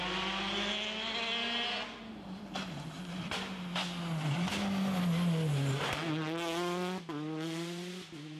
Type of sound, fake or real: real